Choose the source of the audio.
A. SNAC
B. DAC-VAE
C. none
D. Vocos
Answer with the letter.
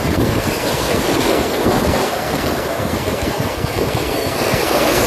A